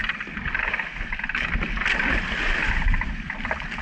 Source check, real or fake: real